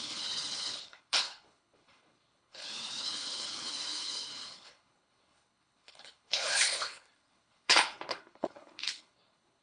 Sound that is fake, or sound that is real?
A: fake